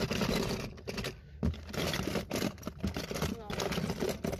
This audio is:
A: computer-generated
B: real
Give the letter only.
B